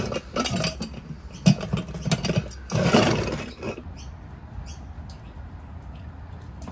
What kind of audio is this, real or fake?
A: real